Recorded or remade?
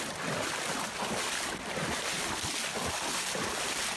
recorded